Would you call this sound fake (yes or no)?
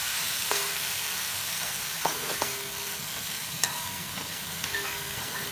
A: yes